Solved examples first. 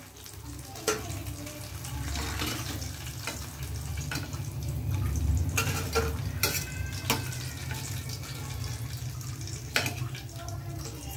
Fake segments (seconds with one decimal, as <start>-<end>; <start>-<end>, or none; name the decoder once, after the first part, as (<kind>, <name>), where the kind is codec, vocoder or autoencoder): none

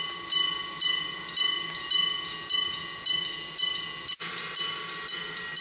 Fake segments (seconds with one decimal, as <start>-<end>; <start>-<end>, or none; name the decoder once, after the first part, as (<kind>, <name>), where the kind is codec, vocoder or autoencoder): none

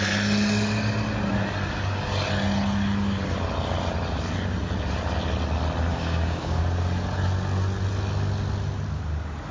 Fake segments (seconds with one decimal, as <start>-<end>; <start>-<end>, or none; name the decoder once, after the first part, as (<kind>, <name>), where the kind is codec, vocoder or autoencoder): 5.9-6.6 (codec, DAC)